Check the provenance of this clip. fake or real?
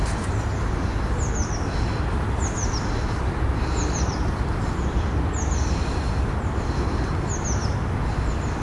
real